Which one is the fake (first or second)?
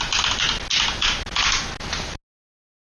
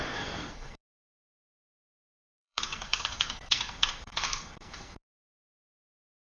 second